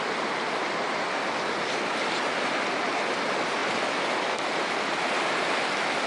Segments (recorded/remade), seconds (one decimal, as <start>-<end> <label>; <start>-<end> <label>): 0.0-6.1 recorded